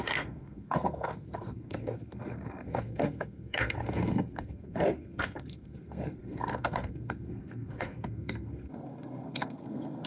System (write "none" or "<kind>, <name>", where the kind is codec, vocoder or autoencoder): codec, SNAC